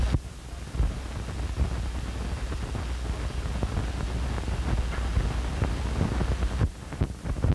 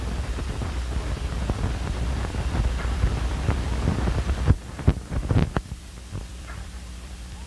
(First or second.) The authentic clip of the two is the first